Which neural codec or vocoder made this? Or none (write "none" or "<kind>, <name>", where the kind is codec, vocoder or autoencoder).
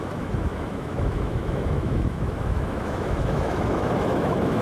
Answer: autoencoder, DAC-VAE